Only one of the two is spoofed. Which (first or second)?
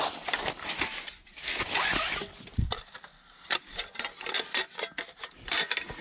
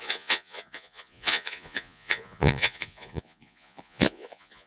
second